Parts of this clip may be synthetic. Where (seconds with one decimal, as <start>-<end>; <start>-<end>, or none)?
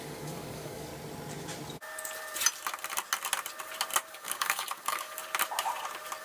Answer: 0.0-0.9; 4.1-5.2